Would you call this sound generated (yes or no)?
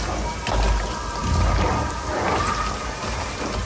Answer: no